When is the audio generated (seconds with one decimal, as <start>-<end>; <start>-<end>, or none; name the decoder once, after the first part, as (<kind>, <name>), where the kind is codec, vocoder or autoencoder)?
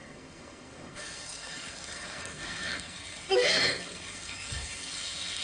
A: 0.0-5.4 (codec, SNAC)